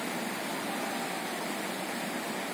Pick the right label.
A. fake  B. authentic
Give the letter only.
B